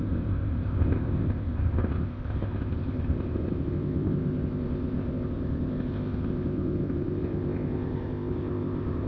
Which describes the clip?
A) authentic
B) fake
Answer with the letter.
B